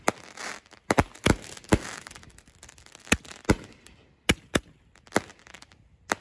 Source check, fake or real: real